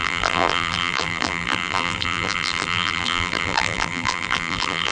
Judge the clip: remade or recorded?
remade